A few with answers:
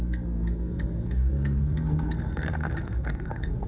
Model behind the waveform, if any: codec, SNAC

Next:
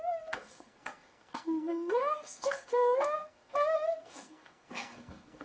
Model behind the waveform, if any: codec, SNAC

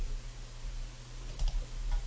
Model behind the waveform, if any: none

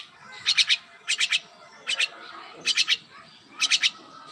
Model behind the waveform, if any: none